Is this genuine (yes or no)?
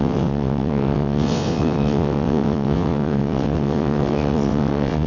no